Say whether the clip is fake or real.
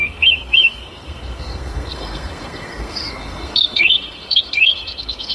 fake